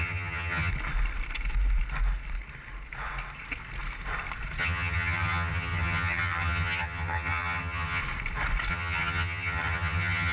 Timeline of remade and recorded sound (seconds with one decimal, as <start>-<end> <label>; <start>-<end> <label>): 0.0-0.7 remade; 0.7-4.6 recorded; 4.6-8.0 remade; 8.0-8.7 recorded; 8.7-10.3 remade

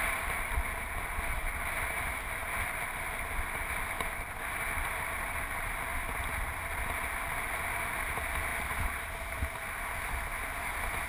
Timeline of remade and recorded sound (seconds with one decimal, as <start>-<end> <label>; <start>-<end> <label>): 0.0-2.4 recorded; 2.4-3.6 remade; 3.6-8.5 recorded; 8.5-9.1 remade; 9.1-11.1 recorded

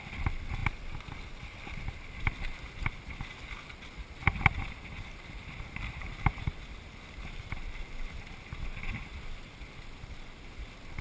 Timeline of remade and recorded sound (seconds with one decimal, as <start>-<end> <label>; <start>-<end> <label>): 0.0-4.2 recorded; 4.2-8.3 remade; 8.3-11.0 recorded

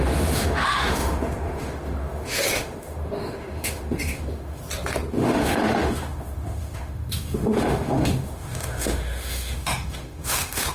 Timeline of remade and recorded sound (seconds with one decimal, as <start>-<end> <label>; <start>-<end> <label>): 0.0-4.6 remade; 4.6-5.1 recorded; 5.1-10.7 remade

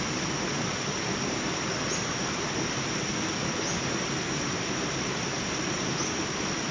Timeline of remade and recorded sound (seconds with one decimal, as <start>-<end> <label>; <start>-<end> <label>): 0.0-6.7 recorded

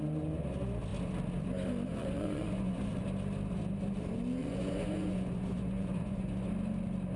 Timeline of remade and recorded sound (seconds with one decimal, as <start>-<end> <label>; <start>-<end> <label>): 0.0-1.9 recorded; 1.9-3.0 remade; 3.0-4.4 recorded; 4.4-6.5 remade; 6.5-7.2 recorded

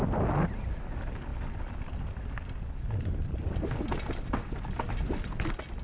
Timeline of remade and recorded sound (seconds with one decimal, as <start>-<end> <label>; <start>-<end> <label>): 0.0-5.8 recorded